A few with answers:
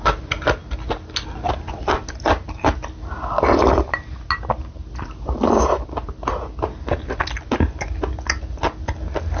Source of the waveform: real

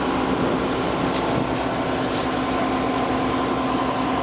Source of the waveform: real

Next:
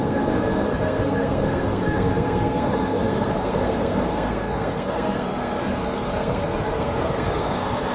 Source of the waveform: fake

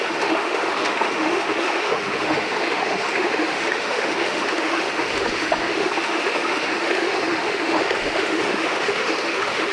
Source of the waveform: fake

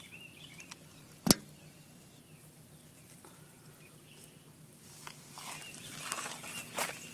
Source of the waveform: real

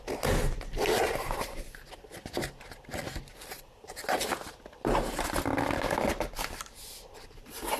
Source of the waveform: real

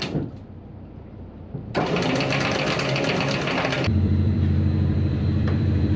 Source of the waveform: fake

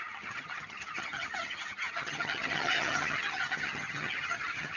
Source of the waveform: fake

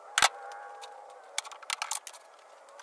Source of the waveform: real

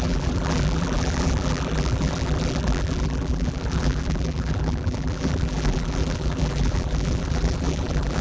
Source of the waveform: fake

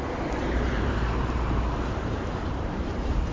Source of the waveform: fake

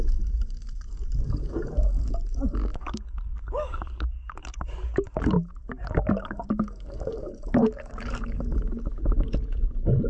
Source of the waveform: fake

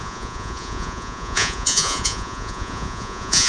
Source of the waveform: fake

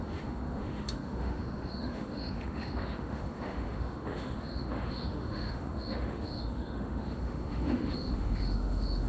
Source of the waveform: fake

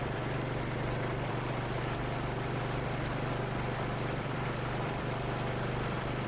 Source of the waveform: fake